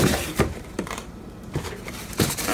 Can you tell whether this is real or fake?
fake